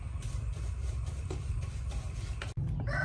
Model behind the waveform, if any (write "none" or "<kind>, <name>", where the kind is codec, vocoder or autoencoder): none